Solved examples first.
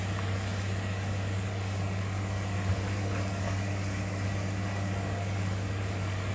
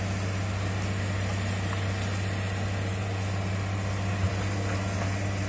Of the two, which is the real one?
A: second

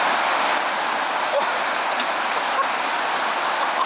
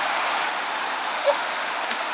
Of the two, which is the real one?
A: first